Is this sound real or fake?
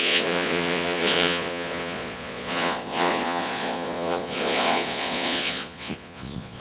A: fake